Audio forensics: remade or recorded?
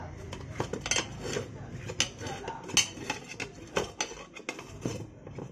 recorded